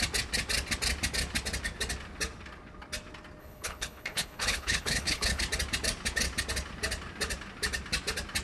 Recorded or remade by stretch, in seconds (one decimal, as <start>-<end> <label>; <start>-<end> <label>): 0.0-3.4 recorded; 3.4-5.4 remade; 5.4-8.4 recorded